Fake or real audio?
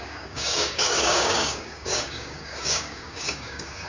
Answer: fake